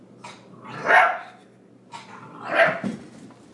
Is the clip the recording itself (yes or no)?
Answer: yes